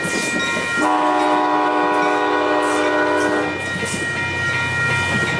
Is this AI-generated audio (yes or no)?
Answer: no